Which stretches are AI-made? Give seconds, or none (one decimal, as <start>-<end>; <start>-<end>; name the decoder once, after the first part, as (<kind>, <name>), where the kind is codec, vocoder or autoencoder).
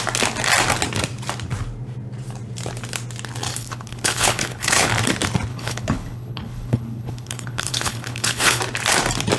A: 3.5-4.9 (codec, HILCodec); 5.5-8.6